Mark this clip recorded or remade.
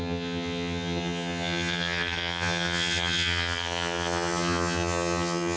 remade